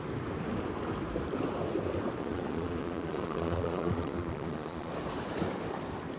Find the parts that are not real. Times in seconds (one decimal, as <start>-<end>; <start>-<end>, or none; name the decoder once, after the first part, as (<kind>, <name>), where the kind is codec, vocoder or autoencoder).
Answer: 2.2-4.9 (vocoder, Vocos)